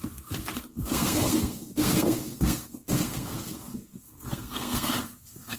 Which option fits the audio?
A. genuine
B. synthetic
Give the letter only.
B